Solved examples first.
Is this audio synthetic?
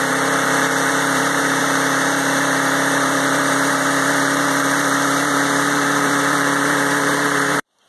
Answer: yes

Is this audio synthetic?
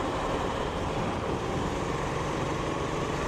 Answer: yes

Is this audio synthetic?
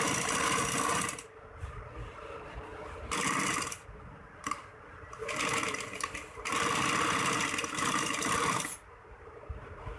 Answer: yes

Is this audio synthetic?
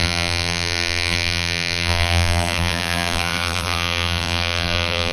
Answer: yes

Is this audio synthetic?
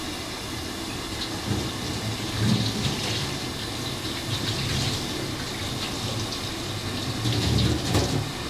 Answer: no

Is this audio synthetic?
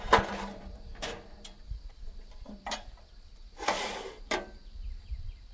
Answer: yes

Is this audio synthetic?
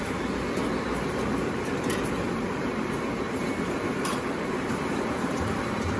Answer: yes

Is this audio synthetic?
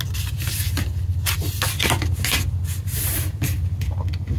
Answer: no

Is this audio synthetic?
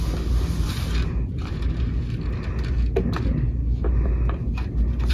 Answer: no